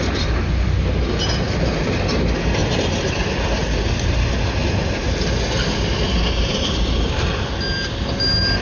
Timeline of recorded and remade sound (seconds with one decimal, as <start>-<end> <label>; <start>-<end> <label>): 0.0-2.6 recorded; 2.6-3.1 remade; 3.1-4.6 recorded; 4.6-7.5 remade; 7.5-8.6 recorded